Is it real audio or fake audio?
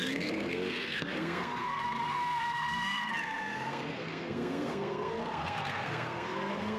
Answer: fake